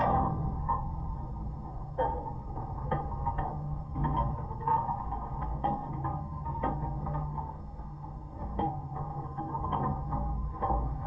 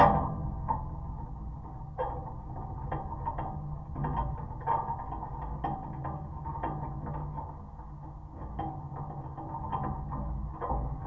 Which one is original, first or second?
second